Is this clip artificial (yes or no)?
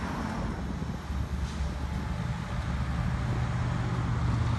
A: no